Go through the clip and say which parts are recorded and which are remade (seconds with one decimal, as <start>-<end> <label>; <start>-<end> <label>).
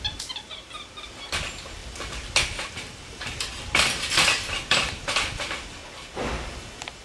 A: 0.0-7.0 recorded